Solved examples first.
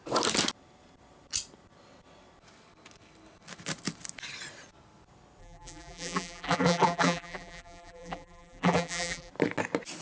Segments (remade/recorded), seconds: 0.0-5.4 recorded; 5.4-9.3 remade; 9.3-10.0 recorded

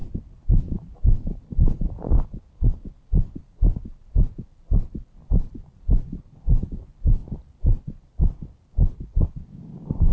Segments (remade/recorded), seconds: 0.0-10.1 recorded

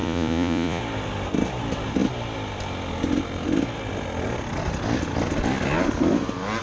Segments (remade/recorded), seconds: 0.0-0.8 remade; 0.8-6.6 recorded

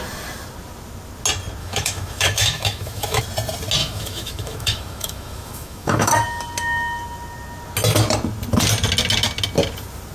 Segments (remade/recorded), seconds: 0.0-1.6 recorded; 1.6-3.2 remade; 3.2-3.8 recorded; 3.8-6.1 remade; 6.1-10.1 recorded